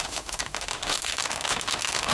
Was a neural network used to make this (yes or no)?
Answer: yes